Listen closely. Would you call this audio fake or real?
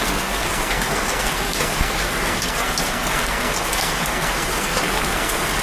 fake